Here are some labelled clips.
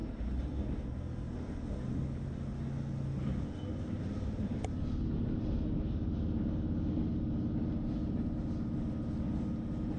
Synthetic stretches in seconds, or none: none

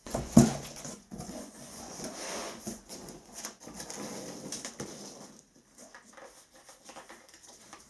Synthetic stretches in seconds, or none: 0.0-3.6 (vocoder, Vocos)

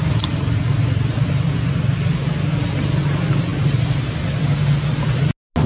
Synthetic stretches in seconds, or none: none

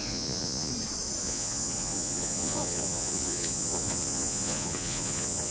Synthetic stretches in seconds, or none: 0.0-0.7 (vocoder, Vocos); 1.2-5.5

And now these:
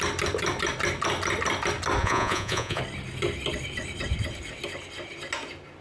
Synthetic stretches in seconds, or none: 2.0-2.8 (vocoder, Vocos)

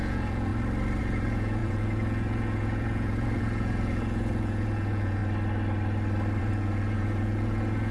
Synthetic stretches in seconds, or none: 0.0-0.5 (vocoder, Vocos); 1.0-5.2; 6.4-7.9